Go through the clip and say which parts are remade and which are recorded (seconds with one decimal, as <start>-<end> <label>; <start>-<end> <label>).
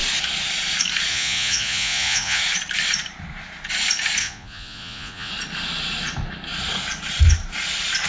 0.0-1.1 recorded; 1.1-2.4 remade; 2.4-4.2 recorded; 4.2-5.3 remade; 5.3-8.1 recorded